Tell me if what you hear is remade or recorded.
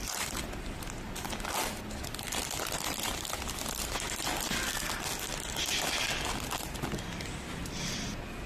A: recorded